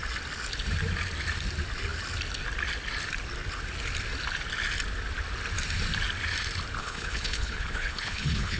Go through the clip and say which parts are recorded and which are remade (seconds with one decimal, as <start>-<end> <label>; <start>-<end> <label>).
0.0-6.8 recorded; 6.8-8.6 remade